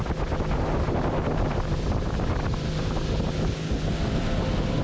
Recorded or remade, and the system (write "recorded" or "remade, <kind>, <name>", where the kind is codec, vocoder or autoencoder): recorded